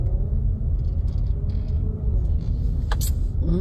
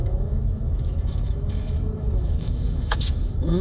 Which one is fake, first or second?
second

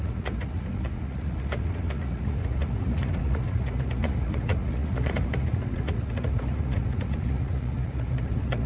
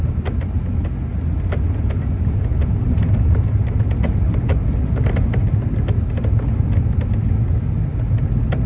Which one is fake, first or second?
first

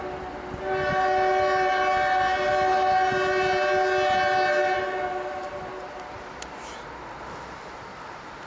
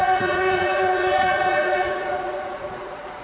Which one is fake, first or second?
second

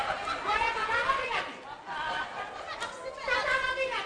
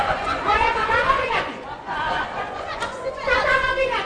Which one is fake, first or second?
second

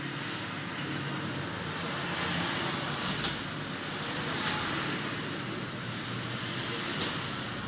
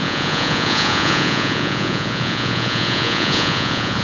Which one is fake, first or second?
second